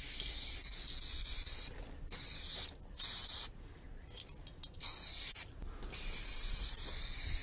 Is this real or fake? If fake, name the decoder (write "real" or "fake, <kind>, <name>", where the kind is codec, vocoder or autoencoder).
real